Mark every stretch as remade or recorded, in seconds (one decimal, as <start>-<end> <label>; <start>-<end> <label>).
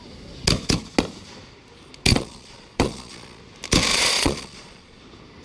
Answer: 0.0-2.1 recorded; 2.1-3.4 remade; 3.4-3.9 recorded; 3.9-5.0 remade; 5.0-5.4 recorded